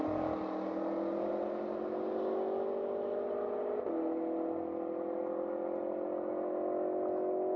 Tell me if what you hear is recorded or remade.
recorded